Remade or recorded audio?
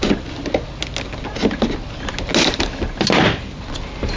recorded